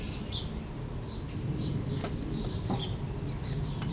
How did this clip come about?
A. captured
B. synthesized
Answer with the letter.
A